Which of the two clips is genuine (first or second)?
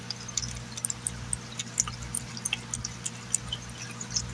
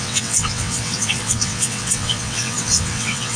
first